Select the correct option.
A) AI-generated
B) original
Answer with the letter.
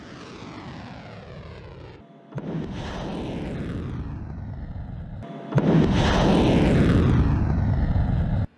B